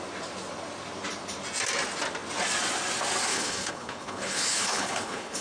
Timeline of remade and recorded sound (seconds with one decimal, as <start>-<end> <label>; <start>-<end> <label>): 0.0-3.3 recorded; 3.3-5.4 remade